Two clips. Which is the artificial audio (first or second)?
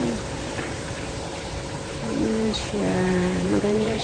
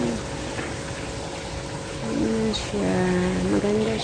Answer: first